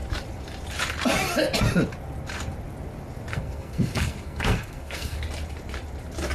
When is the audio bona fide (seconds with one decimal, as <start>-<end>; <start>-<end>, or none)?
0.0-3.3; 5.2-6.3